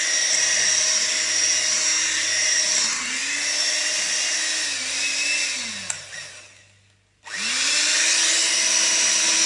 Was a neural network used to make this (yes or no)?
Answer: no